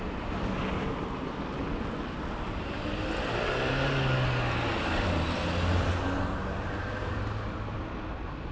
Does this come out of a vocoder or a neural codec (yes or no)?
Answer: no